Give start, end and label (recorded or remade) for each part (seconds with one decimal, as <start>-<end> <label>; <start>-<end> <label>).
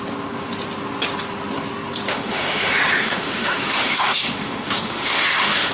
0.0-2.1 recorded; 2.1-5.7 remade